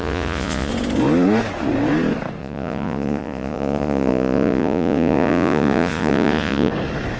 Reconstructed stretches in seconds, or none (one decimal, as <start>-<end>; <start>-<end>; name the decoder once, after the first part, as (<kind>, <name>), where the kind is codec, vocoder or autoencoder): 0.0-0.7 (vocoder, Vocos); 2.4-6.7